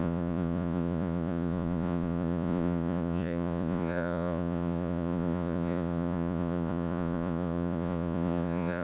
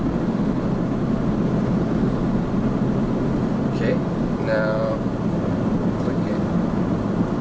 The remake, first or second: first